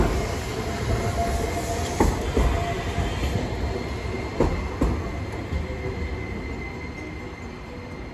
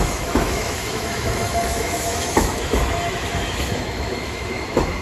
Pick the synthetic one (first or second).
second